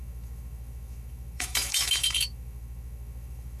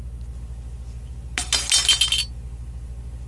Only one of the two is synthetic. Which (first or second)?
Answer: first